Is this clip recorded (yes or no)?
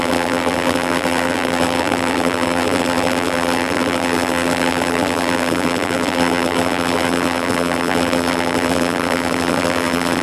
no